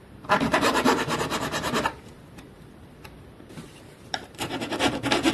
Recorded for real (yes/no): no